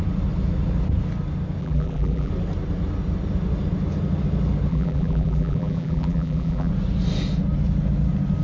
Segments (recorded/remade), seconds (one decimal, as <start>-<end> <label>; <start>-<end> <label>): 0.0-1.6 recorded; 1.6-2.3 remade; 2.3-4.7 recorded; 4.7-6.7 remade; 6.7-8.4 recorded